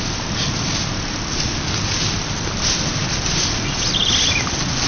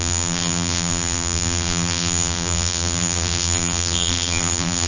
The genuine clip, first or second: first